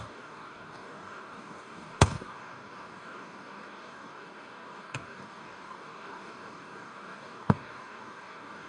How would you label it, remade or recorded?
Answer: remade